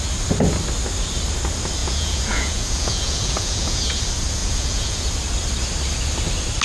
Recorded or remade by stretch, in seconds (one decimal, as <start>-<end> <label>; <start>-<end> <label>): 0.0-1.8 recorded; 1.8-4.0 remade; 4.0-4.4 recorded; 4.4-5.1 remade; 5.1-6.6 recorded